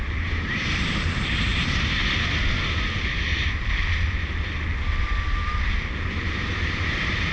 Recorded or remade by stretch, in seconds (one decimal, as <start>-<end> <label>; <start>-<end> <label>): 0.0-2.0 remade; 2.0-3.4 recorded; 3.4-3.8 remade; 3.8-6.2 recorded; 6.2-7.3 remade